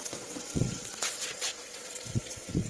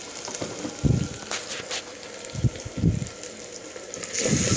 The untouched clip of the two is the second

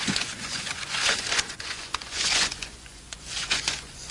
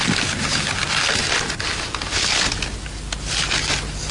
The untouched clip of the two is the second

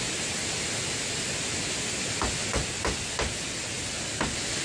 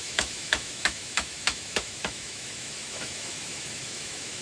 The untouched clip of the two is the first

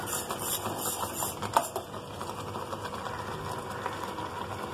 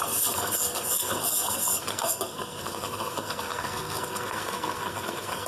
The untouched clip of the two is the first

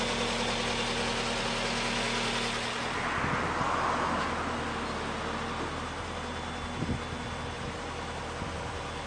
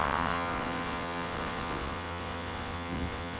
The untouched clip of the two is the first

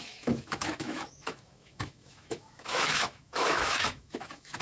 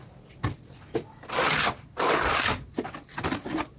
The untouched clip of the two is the second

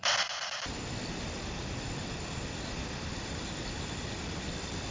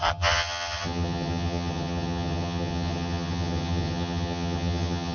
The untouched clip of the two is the first